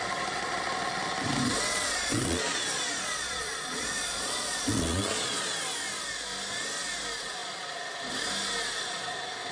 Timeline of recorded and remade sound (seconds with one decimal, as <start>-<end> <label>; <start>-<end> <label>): 0.0-1.7 recorded; 1.7-5.6 remade; 5.6-9.5 recorded